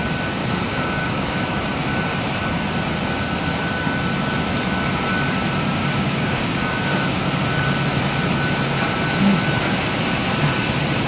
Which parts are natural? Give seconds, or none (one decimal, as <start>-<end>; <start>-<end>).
0.0-0.4; 1.6-5.8; 7.2-11.1